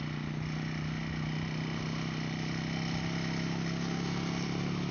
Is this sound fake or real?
real